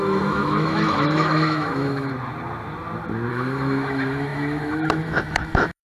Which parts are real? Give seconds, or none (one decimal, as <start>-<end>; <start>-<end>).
2.1-3.3